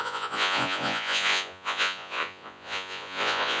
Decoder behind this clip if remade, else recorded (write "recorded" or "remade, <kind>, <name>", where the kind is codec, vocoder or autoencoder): remade, vocoder, Vocos